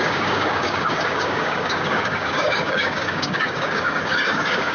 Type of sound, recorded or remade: remade